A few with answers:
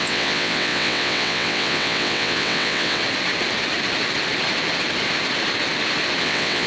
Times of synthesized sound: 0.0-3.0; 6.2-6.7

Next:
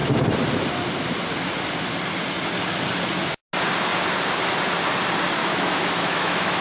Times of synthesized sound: 5.4-6.6

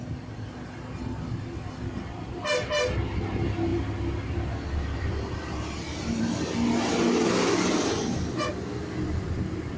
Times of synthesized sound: none

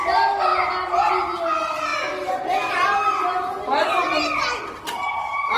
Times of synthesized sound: none

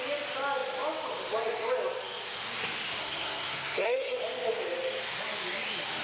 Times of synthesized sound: 3.0-4.2